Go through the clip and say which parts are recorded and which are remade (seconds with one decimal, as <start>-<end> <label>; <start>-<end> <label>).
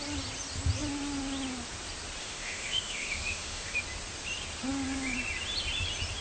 0.0-2.2 recorded; 2.2-3.8 remade; 3.8-6.2 recorded